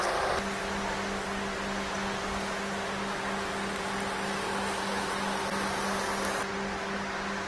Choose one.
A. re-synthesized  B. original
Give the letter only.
B